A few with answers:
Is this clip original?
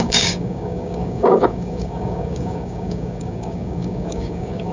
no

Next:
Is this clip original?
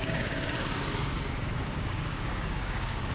no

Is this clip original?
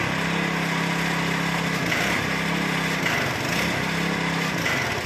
yes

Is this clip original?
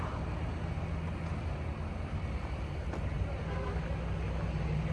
yes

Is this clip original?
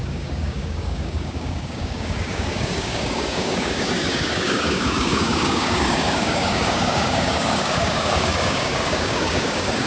no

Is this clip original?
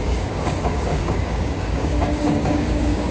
no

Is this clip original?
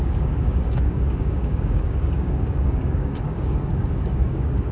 no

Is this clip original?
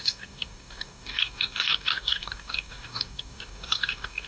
no